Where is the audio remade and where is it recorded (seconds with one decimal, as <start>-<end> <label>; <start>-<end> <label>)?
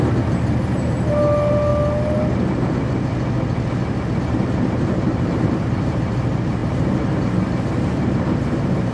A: 0.0-1.7 remade; 1.7-4.2 recorded; 4.2-8.9 remade